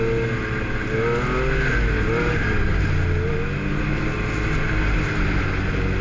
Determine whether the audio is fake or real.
real